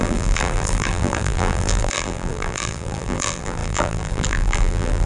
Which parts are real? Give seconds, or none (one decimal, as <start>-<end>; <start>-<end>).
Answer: none